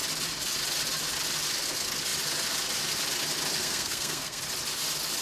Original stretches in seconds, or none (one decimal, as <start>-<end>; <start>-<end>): 0.0-3.6; 4.4-5.2